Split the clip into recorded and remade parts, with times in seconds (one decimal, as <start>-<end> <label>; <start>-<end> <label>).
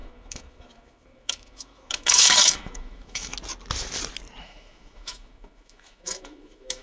0.0-3.3 remade; 3.3-4.4 recorded; 4.4-6.8 remade